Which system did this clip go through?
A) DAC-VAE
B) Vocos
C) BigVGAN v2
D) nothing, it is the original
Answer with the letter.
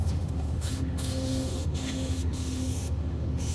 A